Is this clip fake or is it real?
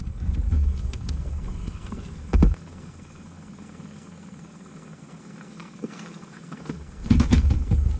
fake